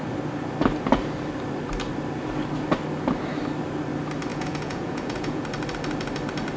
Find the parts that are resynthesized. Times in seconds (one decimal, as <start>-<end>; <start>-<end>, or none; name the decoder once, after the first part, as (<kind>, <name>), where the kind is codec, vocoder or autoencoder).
4.3-5.4 (vocoder, Vocos)